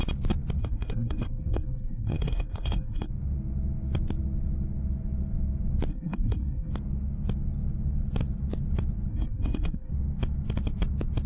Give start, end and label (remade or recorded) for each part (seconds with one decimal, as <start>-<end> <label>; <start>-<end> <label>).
0.0-0.6 recorded; 0.6-3.1 remade; 3.1-5.9 recorded; 5.9-6.7 remade; 6.7-9.1 recorded; 9.1-9.9 remade; 9.9-11.3 recorded